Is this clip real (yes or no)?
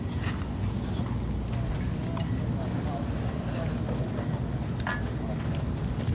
yes